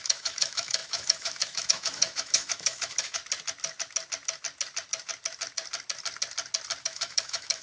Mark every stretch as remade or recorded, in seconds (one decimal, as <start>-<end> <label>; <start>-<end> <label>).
0.0-3.2 remade; 3.2-6.8 recorded; 6.8-7.6 remade